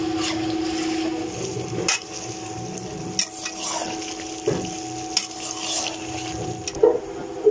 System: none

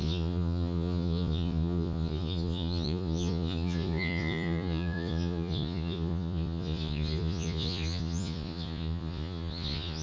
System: vocoder, Vocos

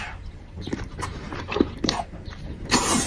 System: vocoder, BigVGAN v2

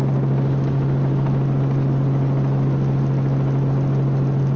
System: none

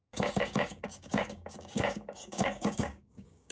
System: codec, DAC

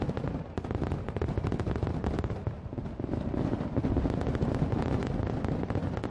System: none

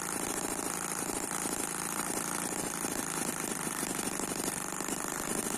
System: none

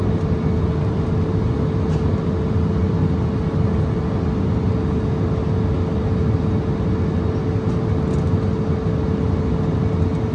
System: none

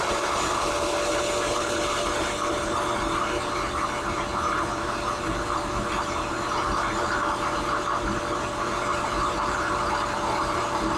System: none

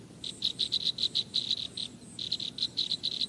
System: none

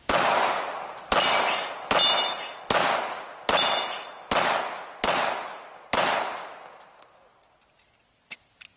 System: none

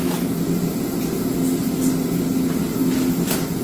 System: none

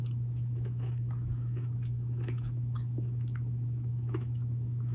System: autoencoder, DAC-VAE